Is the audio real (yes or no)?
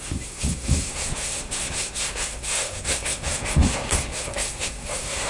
no